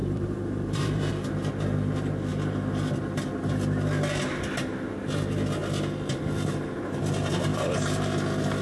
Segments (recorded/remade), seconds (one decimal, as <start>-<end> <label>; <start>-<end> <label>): 0.0-1.1 remade; 1.1-7.5 recorded; 7.5-8.1 remade; 8.1-8.6 recorded

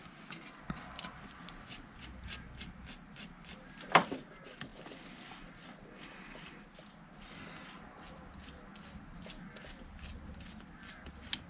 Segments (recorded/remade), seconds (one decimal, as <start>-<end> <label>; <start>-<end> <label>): 0.0-11.5 recorded

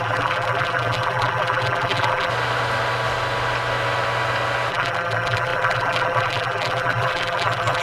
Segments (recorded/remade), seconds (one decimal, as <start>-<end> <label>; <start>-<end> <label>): 0.0-2.3 remade; 2.3-4.7 recorded; 4.7-7.8 remade

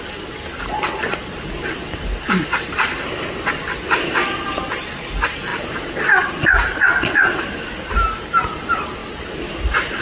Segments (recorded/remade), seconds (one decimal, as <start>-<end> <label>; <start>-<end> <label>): 0.0-1.0 recorded; 1.0-2.8 remade; 2.8-5.5 recorded; 5.5-7.3 remade; 7.3-9.0 recorded; 9.0-10.0 remade

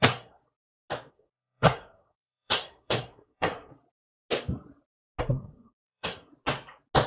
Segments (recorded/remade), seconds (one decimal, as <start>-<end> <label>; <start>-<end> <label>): 0.0-0.4 remade; 0.4-1.1 recorded; 1.1-3.7 remade; 3.7-5.2 recorded; 5.2-6.3 remade; 6.3-7.1 recorded